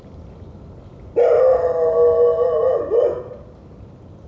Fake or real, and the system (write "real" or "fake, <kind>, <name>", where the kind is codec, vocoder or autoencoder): real